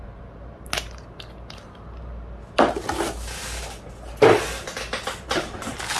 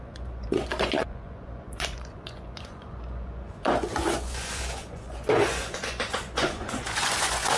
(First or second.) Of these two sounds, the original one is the first